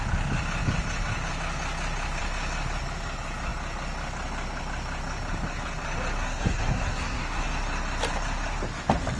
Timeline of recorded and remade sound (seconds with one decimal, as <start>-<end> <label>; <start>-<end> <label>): 0.0-6.2 recorded; 6.2-7.5 remade; 7.5-9.2 recorded